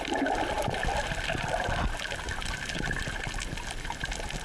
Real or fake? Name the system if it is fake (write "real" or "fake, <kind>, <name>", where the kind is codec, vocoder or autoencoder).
real